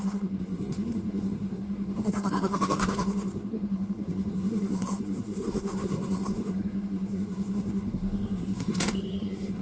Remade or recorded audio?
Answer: remade